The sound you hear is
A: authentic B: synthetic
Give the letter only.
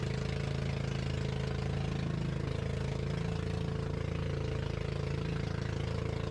A